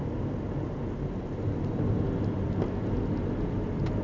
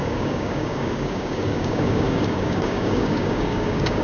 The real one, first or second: first